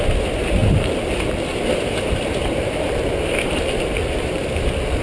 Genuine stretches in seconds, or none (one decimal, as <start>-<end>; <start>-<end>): 0.0-0.6; 1.1-1.5; 4.5-5.0